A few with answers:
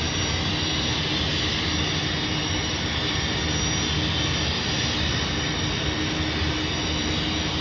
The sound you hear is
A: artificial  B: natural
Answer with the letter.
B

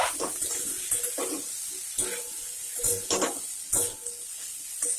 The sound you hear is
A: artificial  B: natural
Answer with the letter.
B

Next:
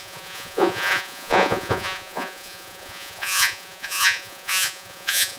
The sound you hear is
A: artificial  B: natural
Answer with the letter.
A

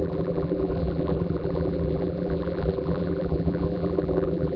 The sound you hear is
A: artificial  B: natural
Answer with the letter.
A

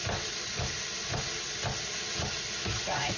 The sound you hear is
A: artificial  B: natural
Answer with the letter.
B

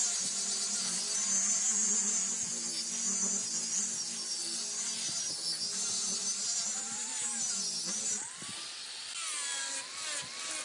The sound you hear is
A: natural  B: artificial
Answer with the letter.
A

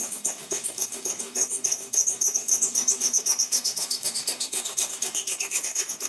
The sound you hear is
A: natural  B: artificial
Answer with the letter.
B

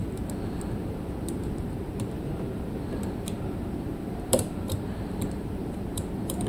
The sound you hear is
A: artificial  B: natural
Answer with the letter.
A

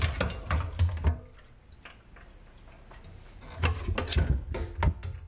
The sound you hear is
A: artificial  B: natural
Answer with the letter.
B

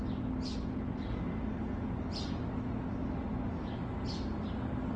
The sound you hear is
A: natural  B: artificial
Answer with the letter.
A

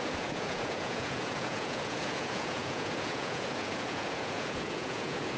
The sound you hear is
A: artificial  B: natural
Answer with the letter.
A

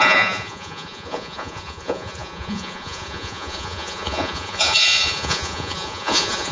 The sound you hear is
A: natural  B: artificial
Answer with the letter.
B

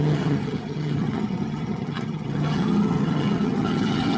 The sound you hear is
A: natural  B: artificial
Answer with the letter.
B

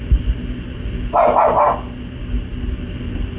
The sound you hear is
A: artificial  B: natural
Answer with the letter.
B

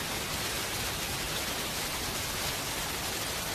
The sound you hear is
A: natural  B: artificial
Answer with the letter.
A